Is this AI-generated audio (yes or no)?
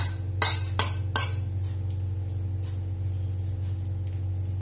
no